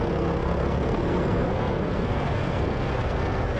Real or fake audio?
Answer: fake